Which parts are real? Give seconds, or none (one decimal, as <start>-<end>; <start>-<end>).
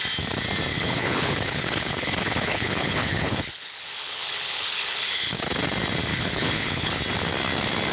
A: 0.0-0.7; 5.4-6.1; 7.0-7.9